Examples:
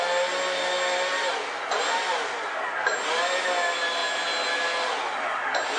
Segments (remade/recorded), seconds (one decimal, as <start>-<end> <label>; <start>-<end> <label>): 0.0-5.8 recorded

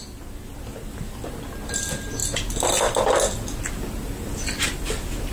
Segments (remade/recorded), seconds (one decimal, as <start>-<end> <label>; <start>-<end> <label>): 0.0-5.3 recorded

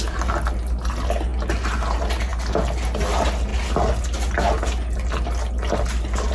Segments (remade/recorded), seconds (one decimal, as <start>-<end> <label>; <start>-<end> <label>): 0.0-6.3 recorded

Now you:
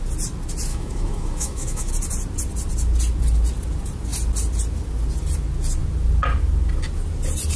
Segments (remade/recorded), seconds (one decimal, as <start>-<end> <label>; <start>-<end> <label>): 0.0-0.7 recorded; 0.7-1.9 remade; 1.9-7.6 recorded